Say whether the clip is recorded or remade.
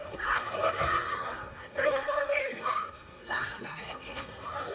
remade